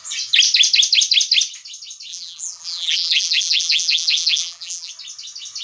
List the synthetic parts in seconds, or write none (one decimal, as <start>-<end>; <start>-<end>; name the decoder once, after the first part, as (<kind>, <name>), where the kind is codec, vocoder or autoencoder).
2.1-4.9 (vocoder, BigVGAN v2)